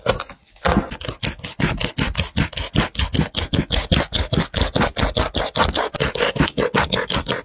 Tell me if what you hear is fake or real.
real